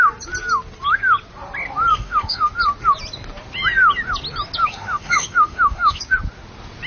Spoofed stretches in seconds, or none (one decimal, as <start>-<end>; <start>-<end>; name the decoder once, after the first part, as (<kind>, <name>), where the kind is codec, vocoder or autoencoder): 1.9-2.5 (autoencoder, DAC-VAE); 4.6-6.0